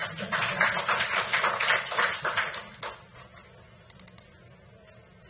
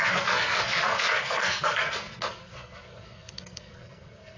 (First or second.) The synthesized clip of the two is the second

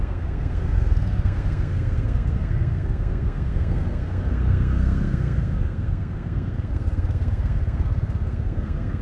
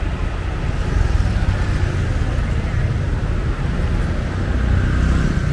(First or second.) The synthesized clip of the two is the first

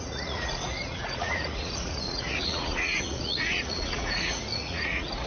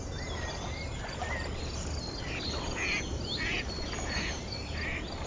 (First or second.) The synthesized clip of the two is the first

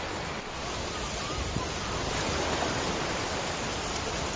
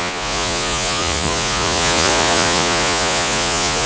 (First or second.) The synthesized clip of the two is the second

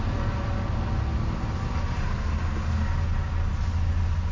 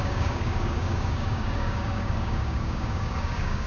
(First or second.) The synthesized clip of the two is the second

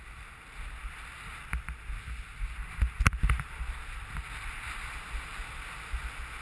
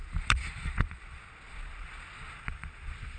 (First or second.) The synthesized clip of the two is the second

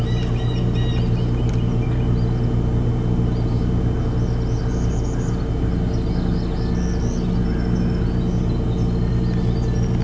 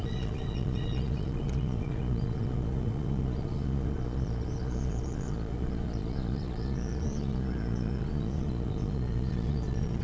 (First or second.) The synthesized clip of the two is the second